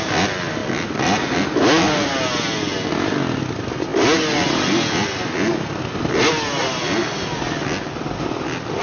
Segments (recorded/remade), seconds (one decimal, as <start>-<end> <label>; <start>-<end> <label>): 0.0-8.8 recorded